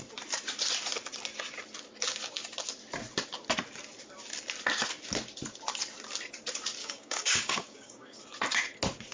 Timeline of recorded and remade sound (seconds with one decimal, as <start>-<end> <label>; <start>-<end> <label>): 0.0-6.8 recorded; 6.8-8.2 remade; 8.2-9.1 recorded